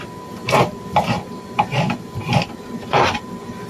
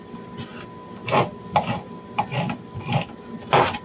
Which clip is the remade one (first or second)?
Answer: first